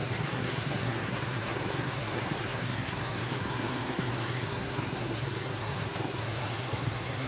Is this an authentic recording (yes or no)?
no